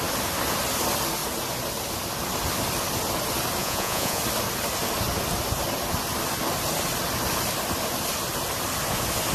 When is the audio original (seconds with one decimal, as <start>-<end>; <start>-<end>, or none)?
0.0-3.6; 4.2-9.3